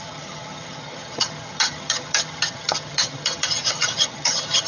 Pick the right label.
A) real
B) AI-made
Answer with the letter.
B